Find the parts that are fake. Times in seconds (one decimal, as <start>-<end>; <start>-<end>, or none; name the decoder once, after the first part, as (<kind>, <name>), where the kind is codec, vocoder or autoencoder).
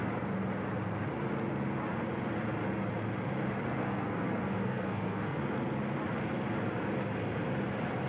3.8-5.4 (codec, SNAC)